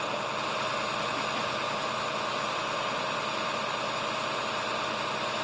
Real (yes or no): yes